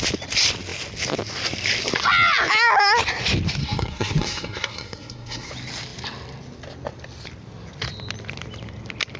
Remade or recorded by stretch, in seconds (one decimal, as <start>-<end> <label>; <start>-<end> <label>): 0.0-3.6 recorded; 3.6-5.5 remade; 5.5-9.2 recorded